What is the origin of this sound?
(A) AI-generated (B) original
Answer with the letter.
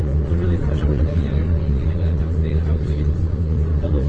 A